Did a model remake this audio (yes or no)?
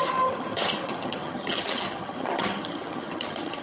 yes